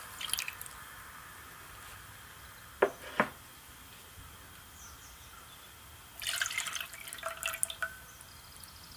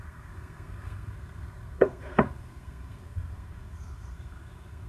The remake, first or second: second